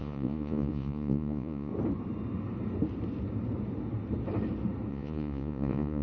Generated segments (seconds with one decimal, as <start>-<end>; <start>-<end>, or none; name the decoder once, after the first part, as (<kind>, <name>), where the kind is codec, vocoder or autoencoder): 0.0-1.7 (vocoder, Vocos); 4.9-6.0